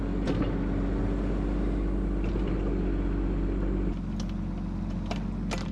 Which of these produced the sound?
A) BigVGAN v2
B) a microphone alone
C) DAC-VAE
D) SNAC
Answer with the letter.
B